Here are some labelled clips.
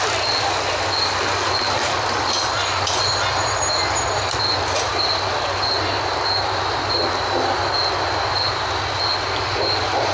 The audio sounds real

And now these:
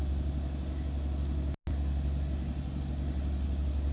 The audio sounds real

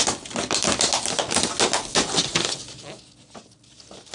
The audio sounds real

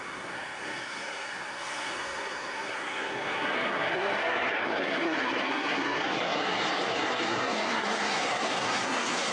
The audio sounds fake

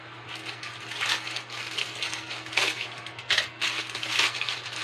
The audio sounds fake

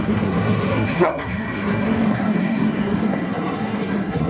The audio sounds fake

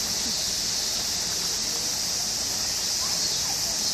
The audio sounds real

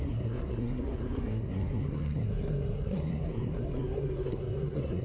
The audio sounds fake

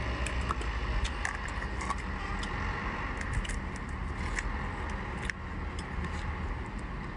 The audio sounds real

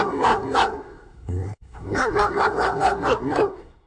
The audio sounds fake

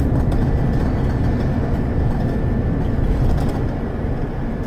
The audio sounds real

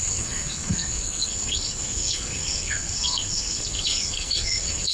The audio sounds fake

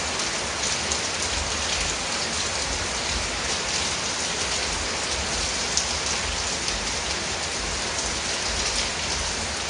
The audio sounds real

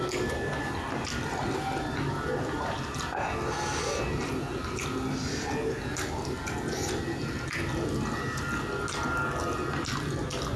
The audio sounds real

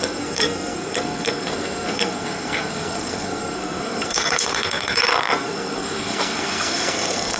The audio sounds fake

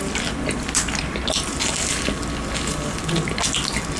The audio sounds real